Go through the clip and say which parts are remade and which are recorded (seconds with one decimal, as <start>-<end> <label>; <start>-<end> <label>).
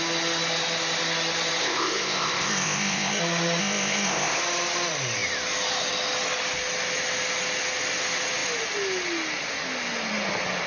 0.0-1.6 recorded; 1.6-3.2 remade; 3.2-3.6 recorded; 3.6-4.4 remade; 4.4-10.7 recorded